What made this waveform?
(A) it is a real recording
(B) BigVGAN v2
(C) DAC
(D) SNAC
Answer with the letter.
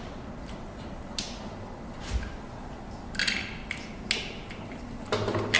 A